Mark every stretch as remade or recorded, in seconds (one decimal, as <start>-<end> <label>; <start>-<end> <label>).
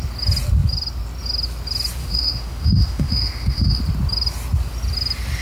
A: 0.0-2.0 recorded; 2.0-3.8 remade; 3.8-5.4 recorded